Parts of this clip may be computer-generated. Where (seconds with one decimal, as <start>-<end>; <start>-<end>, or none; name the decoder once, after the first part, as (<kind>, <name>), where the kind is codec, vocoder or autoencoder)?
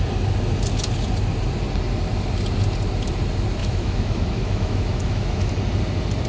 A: 3.6-5.5 (autoencoder, DAC-VAE)